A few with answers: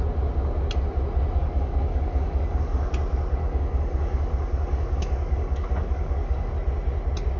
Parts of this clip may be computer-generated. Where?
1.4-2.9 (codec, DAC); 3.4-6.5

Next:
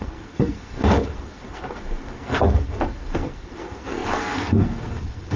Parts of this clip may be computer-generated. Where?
0.0-5.4 (codec, SNAC)

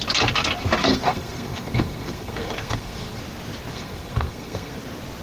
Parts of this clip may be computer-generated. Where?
0.8-3.2 (codec, SNAC); 3.7-4.8

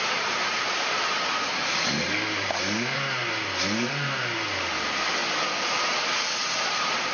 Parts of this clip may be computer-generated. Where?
0.0-5.2 (vocoder, BigVGAN v2); 6.6-7.1